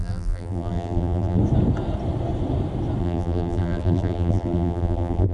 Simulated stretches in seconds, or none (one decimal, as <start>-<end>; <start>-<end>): 0.0-1.4; 3.0-5.3